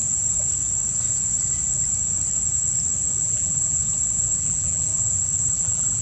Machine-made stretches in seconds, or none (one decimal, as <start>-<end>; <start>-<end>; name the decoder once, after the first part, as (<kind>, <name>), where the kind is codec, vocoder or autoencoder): 3.2-3.8 (vocoder, BigVGAN v2); 4.4-4.9; 5.5-6.0